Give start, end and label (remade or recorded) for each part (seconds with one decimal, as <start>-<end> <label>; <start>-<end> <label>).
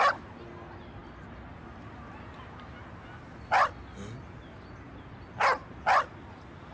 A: 0.0-6.7 recorded